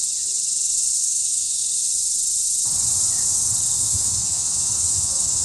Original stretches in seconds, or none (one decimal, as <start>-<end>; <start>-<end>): 0.0-0.9; 1.6-3.8